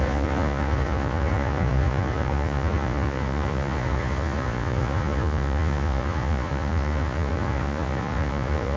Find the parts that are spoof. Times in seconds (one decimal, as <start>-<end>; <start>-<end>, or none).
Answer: 0.0-8.8